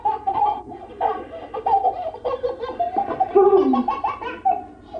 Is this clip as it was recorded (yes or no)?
no